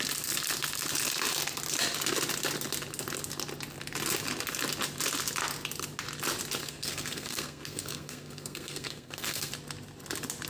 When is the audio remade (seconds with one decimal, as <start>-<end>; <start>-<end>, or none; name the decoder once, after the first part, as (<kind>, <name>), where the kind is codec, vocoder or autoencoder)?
6.6-9.5 (codec, SNAC)